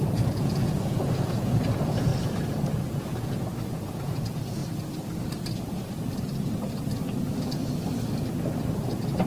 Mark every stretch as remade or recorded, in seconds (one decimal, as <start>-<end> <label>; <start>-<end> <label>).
0.0-2.1 remade; 2.1-3.0 recorded; 3.0-4.6 remade; 4.6-9.3 recorded